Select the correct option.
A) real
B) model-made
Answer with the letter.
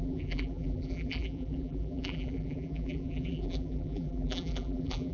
B